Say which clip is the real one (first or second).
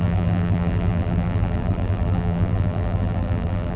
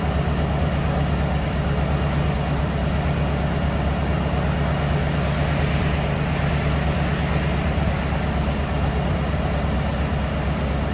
second